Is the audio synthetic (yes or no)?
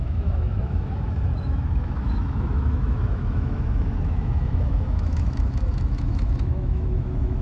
yes